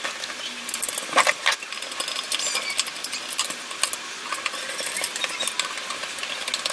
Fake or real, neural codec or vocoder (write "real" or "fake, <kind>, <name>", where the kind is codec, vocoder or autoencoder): real